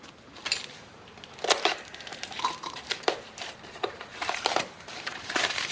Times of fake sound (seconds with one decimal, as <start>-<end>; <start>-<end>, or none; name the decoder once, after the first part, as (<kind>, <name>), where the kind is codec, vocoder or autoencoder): 2.1-5.7 (vocoder, BigVGAN v2)